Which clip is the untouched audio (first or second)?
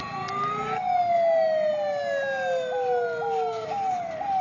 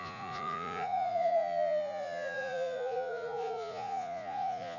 first